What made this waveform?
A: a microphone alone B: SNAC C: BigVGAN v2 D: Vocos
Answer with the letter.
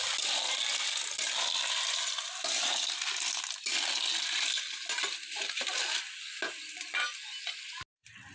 A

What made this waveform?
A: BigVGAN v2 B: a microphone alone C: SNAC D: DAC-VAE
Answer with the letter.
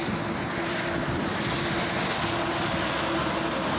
B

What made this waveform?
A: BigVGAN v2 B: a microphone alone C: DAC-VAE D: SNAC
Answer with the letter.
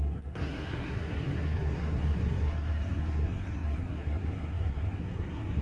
D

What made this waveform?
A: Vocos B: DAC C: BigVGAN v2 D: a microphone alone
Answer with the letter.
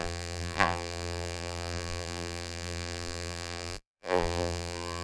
C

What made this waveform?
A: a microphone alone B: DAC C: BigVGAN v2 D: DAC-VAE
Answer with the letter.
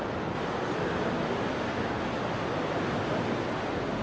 A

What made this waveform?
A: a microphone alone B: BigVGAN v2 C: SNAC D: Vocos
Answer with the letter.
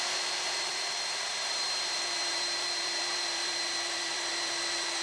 B